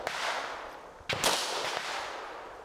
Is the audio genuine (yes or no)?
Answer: yes